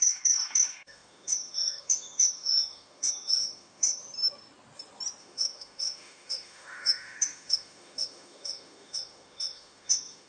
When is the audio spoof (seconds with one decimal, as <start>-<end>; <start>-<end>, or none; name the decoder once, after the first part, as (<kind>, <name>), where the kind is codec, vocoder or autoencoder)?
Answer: 0.0-4.0 (autoencoder, DAC-VAE); 5.2-10.3